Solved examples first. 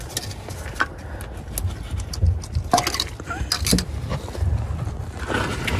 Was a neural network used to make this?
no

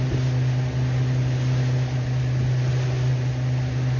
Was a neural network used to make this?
no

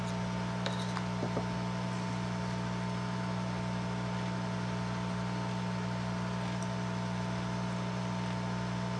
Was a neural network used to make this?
no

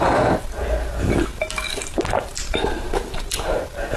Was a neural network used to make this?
no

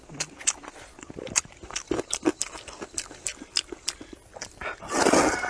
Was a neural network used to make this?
no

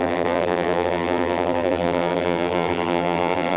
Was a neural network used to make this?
yes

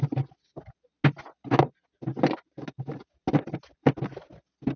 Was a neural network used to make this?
no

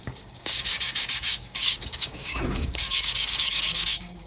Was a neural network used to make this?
yes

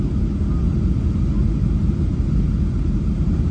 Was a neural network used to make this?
no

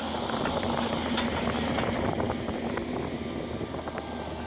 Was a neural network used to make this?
no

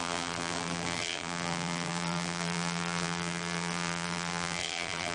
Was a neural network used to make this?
yes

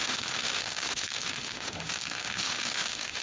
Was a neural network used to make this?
yes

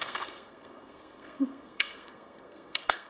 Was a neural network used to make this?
yes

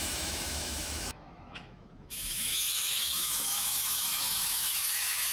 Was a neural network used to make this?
yes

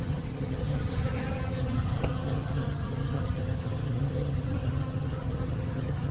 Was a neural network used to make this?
yes